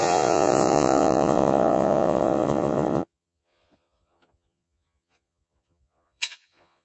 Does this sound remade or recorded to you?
remade